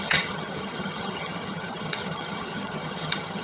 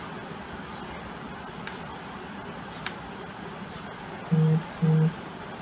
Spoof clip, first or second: first